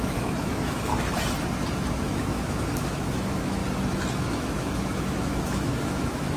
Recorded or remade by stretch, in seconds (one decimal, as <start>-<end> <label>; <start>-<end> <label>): 0.0-0.9 remade; 0.9-1.9 recorded; 1.9-3.6 remade; 3.6-4.2 recorded; 4.2-6.4 remade